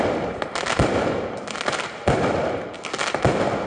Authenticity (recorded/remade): recorded